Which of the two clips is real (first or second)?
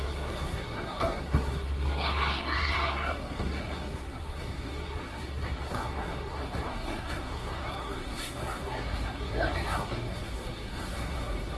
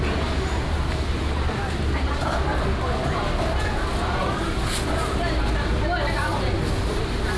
second